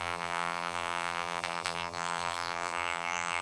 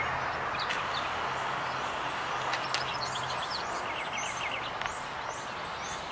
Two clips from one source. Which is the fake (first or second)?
first